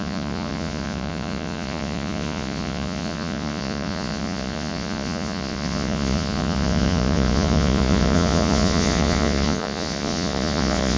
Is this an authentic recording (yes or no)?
no